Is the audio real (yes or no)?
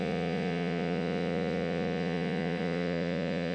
no